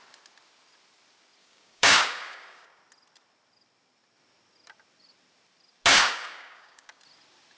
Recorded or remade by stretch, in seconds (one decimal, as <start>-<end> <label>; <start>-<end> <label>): 0.0-1.4 recorded; 1.4-2.8 remade; 2.8-5.9 recorded; 5.9-7.0 remade; 7.0-7.6 recorded